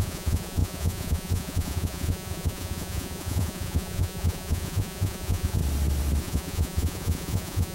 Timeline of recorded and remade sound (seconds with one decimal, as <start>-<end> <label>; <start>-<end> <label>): 0.0-5.6 remade; 5.6-6.2 recorded; 6.2-7.7 remade